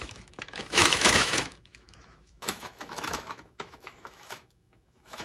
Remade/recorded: remade